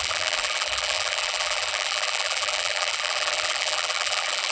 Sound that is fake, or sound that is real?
fake